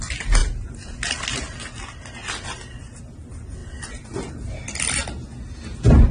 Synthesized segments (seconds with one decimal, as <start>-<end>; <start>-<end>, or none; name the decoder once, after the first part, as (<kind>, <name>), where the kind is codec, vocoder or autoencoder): none

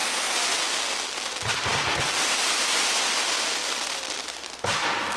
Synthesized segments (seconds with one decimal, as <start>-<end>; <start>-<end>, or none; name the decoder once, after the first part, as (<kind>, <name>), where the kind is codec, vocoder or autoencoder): none

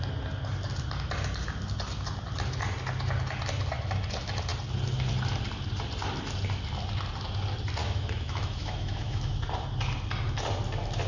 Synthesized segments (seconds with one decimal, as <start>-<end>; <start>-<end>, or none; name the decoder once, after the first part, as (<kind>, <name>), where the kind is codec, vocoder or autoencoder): 7.8-9.4 (autoencoder, DAC-VAE)

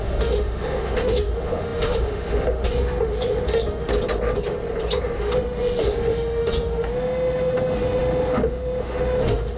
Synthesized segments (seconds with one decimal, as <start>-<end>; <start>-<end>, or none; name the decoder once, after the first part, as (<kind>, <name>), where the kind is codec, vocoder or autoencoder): 0.0-3.9 (autoencoder, DAC-VAE); 5.2-9.6

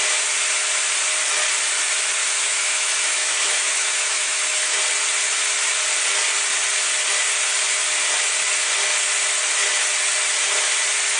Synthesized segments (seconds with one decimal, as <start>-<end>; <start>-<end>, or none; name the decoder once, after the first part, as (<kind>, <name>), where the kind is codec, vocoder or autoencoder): 2.2-4.8 (autoencoder, DAC-VAE)

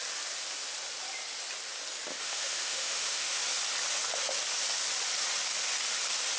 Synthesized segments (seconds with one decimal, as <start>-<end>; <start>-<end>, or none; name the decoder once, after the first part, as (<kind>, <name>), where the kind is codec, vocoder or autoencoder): 2.1-3.4 (autoencoder, DAC-VAE)

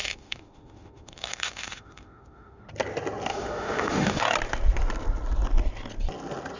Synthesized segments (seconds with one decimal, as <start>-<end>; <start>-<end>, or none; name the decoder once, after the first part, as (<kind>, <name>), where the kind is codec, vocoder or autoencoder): 0.0-2.6 (autoencoder, DAC-VAE); 3.3-4.2